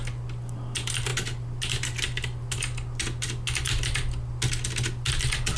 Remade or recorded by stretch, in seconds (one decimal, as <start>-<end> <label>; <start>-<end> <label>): 0.0-5.6 recorded

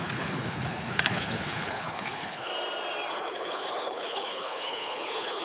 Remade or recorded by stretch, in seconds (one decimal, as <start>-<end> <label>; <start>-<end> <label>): 0.0-2.5 remade; 2.5-3.1 recorded; 3.1-5.4 remade